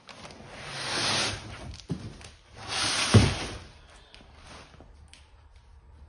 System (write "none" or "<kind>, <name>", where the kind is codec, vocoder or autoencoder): none